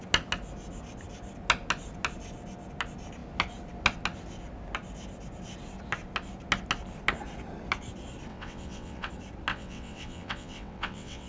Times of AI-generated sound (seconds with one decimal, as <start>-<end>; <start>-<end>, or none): 8.3-9.1; 9.5-11.3